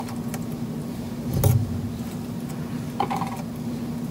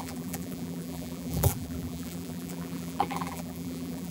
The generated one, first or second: second